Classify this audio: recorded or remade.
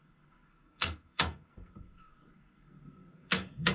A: remade